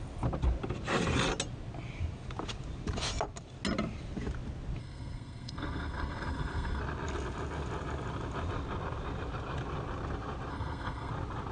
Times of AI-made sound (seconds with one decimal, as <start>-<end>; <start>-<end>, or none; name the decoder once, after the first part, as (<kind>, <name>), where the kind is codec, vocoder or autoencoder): 4.8-6.8 (codec, SNAC); 10.5-11.1